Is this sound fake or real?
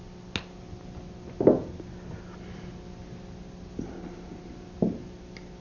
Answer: real